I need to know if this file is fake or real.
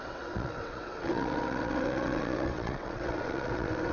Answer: fake